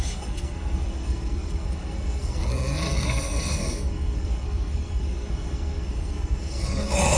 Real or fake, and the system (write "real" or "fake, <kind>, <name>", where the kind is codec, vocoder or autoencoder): fake, codec, SNAC